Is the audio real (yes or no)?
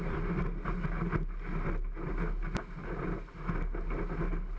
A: yes